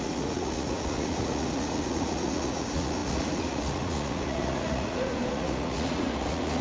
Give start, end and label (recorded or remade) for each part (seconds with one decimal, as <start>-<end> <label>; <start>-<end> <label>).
0.0-6.6 remade